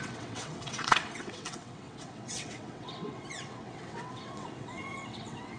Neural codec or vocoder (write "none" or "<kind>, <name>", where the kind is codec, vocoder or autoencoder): vocoder, WaveNeXt